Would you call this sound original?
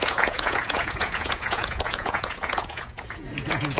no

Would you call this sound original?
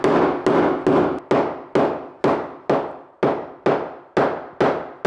yes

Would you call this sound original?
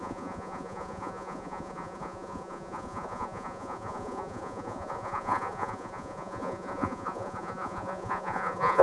no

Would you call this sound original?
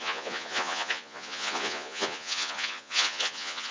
no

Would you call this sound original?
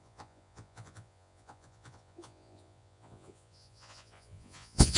no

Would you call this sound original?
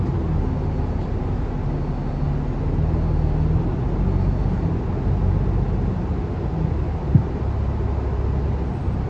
yes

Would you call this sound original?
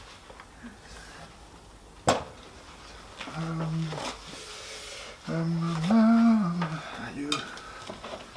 yes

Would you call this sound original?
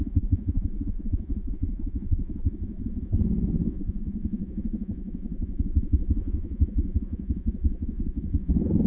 no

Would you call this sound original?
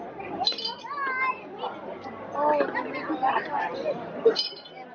yes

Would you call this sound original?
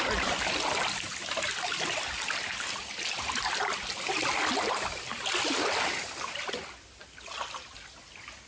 yes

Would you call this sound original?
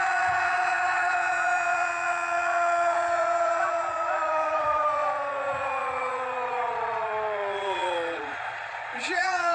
no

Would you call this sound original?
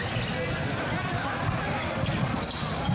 yes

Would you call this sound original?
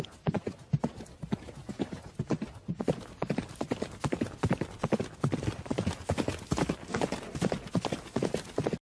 yes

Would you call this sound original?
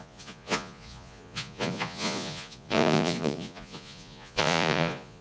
no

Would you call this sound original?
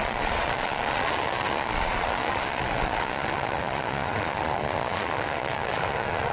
no